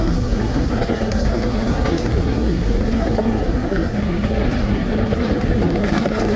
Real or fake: fake